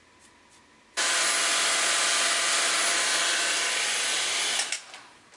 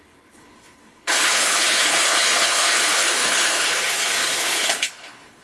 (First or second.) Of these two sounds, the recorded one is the first